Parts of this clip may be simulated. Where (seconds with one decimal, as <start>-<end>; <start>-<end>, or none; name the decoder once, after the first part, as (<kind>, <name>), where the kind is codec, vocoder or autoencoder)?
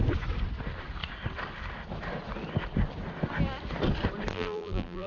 4.3-5.1 (vocoder, BigVGAN v2)